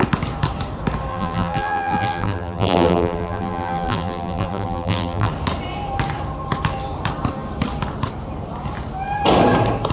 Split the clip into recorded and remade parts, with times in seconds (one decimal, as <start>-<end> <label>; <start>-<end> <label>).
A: 0.0-1.1 recorded; 1.1-5.3 remade; 5.3-9.9 recorded